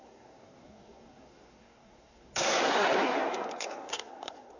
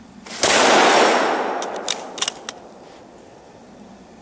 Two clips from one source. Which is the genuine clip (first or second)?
second